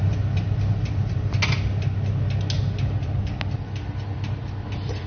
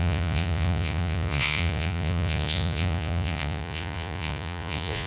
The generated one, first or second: second